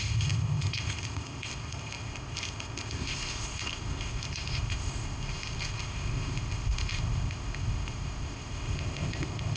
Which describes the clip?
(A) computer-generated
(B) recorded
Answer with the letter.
A